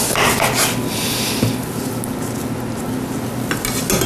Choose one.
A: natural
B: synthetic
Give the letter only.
A